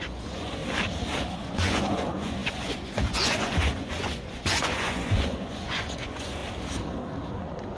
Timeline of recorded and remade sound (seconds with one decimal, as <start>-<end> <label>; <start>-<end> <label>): 0.0-0.6 remade; 0.6-1.3 recorded; 1.3-6.4 remade; 6.4-7.3 recorded; 7.3-7.8 remade